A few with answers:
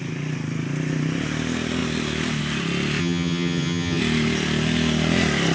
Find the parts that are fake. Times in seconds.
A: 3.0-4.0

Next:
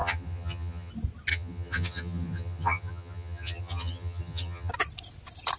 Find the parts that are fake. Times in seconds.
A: 0.0-0.9; 1.3-4.7

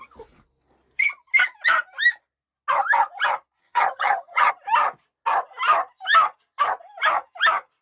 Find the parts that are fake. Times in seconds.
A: 3.6-4.5

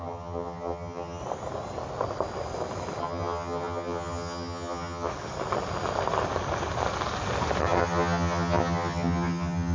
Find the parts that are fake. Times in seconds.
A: 0.0-1.2; 3.0-5.1; 7.6-9.7

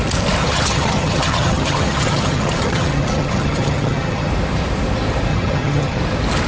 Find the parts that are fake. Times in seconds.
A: 0.4-4.3; 5.3-6.0

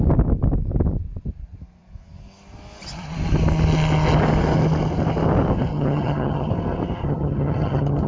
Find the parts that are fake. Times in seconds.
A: 5.7-6.5; 7.0-8.1